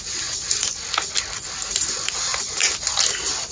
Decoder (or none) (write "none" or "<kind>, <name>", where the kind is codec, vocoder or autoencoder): none